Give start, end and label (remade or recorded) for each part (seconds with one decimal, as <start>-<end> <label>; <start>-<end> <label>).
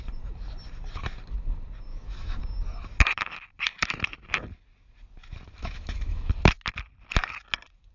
0.0-1.9 recorded; 1.9-2.4 remade; 2.4-5.6 recorded; 5.6-6.3 remade; 6.3-7.9 recorded